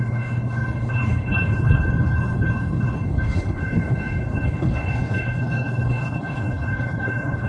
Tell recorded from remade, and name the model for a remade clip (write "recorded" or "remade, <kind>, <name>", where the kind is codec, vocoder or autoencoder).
remade, codec, HILCodec